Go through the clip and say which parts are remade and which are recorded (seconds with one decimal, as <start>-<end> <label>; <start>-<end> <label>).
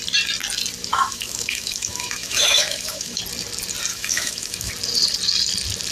0.0-0.9 recorded; 0.9-3.2 remade; 3.2-3.9 recorded; 3.9-4.7 remade; 4.7-5.9 recorded